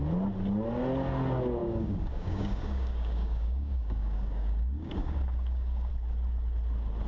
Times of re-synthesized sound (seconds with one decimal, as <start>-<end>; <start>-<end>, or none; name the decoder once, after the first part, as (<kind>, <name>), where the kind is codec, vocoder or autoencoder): 1.6-5.9 (codec, DAC)